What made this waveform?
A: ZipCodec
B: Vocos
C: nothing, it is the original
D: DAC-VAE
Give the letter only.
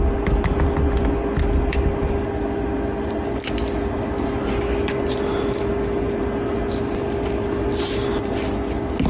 C